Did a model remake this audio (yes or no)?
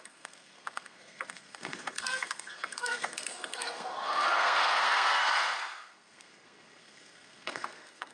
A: yes